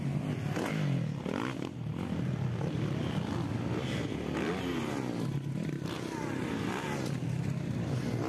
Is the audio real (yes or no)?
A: yes